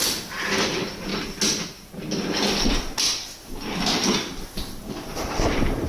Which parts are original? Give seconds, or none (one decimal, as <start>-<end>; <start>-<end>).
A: 1.1-4.6